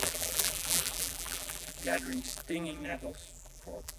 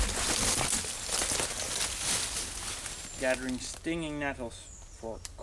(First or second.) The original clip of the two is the second